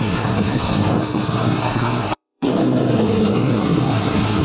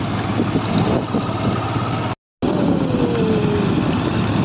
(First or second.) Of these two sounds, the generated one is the first